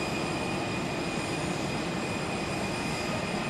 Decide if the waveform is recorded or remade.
recorded